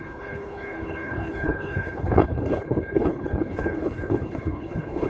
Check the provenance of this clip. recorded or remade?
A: remade